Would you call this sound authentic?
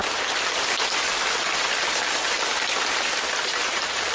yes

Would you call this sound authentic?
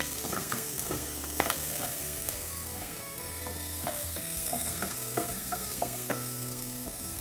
no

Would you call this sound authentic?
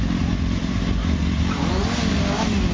yes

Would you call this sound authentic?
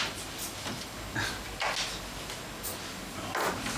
yes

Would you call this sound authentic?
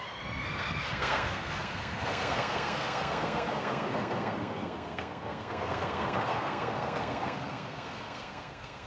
no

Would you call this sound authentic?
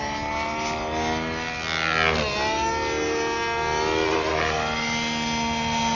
yes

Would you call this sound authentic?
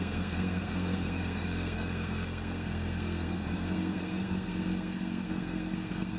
no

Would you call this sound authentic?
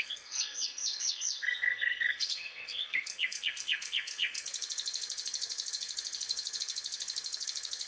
no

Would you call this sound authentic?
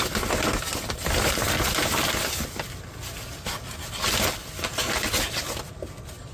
yes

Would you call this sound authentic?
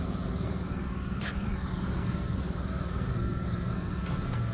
no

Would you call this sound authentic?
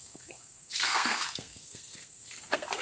no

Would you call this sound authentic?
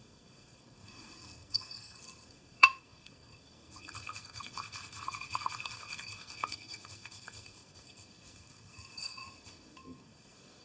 no